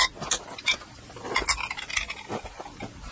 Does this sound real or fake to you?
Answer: real